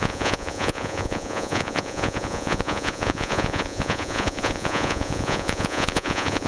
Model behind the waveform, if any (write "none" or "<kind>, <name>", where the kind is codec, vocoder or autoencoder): vocoder, Vocos